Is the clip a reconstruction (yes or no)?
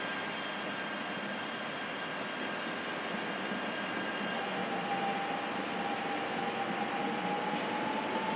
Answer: no